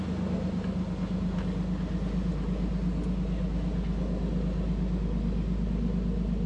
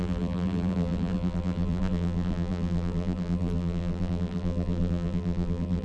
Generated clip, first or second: second